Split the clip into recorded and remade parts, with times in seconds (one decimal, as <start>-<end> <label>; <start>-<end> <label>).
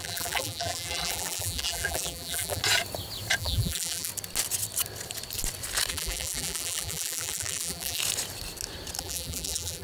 0.0-2.6 remade; 2.6-3.4 recorded; 3.4-4.1 remade; 4.1-5.9 recorded; 5.9-8.0 remade; 8.0-9.0 recorded; 9.0-9.8 remade